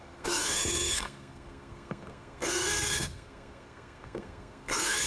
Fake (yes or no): yes